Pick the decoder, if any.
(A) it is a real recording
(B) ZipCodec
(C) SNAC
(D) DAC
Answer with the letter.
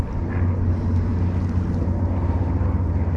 A